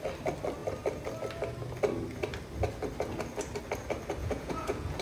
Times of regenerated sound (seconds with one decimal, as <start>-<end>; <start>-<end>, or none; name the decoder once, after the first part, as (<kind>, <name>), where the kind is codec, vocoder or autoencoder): 4.2-5.0 (vocoder, Vocos)